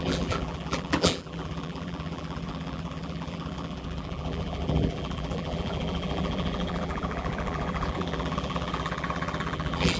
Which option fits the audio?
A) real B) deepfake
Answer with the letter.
B